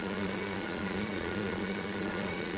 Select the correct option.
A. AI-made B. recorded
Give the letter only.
A